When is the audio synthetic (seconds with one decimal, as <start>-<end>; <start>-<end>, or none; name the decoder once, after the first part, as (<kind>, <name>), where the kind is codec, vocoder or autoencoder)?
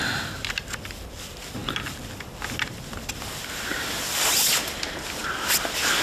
none